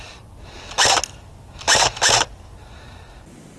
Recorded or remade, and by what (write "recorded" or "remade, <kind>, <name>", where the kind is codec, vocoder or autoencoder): recorded